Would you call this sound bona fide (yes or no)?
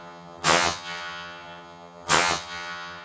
no